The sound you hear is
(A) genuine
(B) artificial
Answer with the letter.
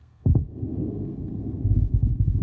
B